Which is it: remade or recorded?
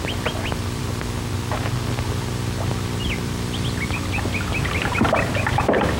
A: remade